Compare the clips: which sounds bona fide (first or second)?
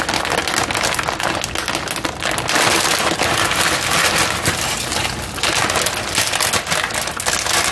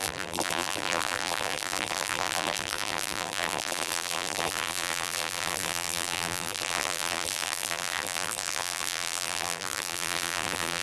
first